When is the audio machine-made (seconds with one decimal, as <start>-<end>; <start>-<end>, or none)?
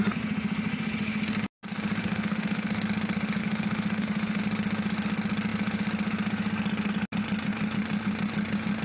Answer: 2.0-2.8; 3.4-4.4